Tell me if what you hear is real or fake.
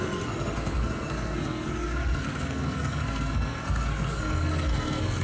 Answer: fake